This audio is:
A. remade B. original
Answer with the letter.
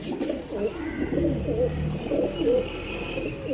B